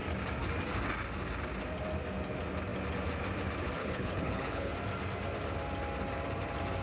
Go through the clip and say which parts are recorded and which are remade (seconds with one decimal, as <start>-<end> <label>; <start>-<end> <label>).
0.0-3.8 recorded; 3.8-4.7 remade; 4.7-6.8 recorded